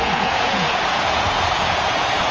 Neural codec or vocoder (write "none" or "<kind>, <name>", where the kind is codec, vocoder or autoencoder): vocoder, Vocos